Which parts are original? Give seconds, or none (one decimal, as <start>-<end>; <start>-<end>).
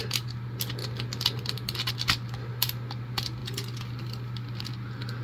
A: 0.0-3.4; 4.6-5.2